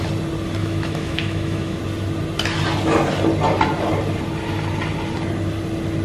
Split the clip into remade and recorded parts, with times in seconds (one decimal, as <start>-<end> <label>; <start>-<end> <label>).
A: 0.0-0.6 recorded; 0.6-1.8 remade; 1.8-6.0 recorded